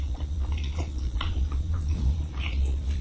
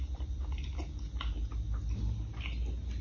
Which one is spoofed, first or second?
first